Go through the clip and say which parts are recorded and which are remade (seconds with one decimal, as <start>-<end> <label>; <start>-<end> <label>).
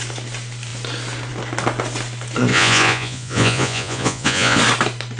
0.0-2.5 recorded; 2.5-4.6 remade; 4.6-5.2 recorded